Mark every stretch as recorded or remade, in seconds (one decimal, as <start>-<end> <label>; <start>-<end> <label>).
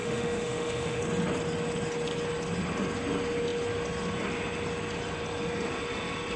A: 0.0-1.0 remade; 1.0-6.4 recorded